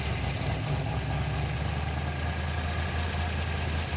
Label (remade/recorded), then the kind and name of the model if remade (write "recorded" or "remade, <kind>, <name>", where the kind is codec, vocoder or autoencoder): recorded